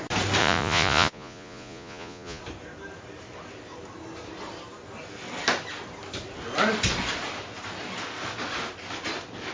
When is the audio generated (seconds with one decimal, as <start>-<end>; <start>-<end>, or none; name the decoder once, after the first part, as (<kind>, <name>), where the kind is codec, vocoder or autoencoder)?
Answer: 0.4-2.4 (vocoder, Vocos)